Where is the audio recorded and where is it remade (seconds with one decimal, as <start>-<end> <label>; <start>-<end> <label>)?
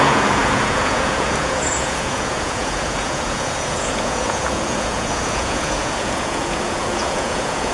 0.0-7.7 remade